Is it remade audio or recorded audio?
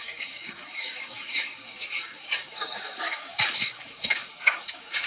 remade